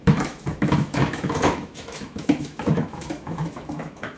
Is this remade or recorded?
remade